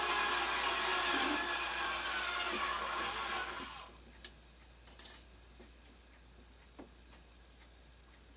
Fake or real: real